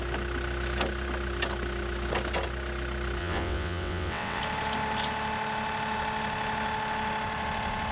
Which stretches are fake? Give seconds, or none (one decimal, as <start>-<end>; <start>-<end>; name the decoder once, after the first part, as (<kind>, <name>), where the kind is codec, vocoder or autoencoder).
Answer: 3.2-4.4 (vocoder, WaveNeXt)